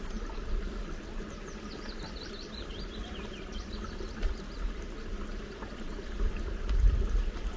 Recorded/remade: recorded